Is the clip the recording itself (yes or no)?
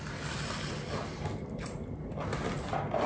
yes